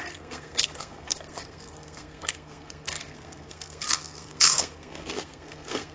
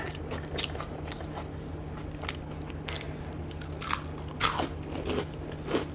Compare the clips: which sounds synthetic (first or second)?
first